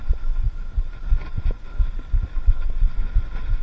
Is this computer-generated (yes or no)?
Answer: no